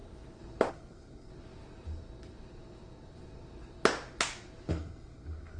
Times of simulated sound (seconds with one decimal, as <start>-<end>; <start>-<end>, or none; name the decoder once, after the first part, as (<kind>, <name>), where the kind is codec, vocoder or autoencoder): 0.7-1.3 (codec, SNAC); 4.7-5.6